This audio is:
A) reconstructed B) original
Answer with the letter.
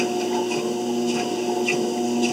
B